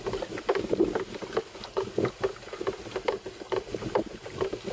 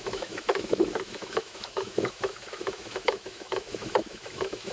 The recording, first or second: first